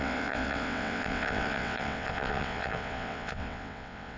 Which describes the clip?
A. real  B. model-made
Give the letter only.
B